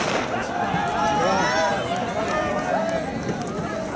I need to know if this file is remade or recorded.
recorded